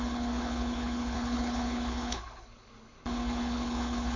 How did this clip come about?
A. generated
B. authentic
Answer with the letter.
A